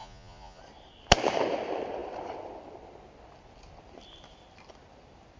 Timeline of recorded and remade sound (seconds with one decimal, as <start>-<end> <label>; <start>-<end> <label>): 0.0-0.6 remade; 0.6-5.4 recorded